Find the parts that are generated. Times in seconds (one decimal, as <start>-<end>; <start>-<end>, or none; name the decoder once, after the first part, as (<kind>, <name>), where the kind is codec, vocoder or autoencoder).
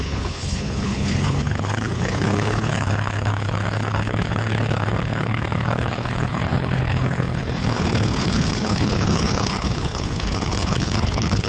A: 0.0-11.5 (codec, HILCodec)